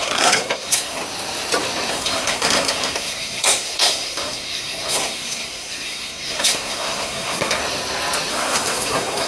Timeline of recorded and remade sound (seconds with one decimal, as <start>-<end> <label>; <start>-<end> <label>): 0.0-1.0 remade; 1.0-1.9 recorded; 1.9-7.6 remade; 7.6-8.3 recorded; 8.3-9.3 remade